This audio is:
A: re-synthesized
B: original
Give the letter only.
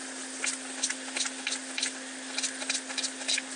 B